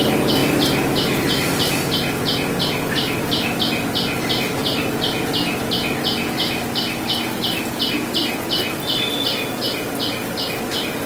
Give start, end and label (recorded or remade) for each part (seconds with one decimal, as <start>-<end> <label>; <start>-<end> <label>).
0.0-4.6 recorded; 4.6-7.0 remade; 7.0-11.1 recorded